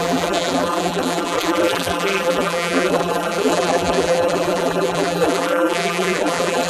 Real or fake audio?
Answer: fake